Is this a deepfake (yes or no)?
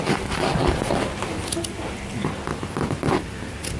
no